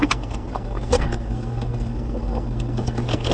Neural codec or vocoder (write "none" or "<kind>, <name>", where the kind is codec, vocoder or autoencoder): codec, SNAC